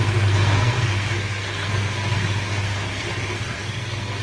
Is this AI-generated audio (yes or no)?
yes